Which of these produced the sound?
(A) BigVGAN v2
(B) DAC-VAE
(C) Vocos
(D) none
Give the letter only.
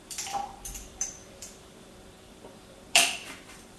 A